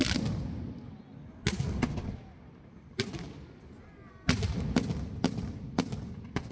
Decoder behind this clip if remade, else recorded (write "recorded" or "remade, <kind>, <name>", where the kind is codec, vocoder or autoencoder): recorded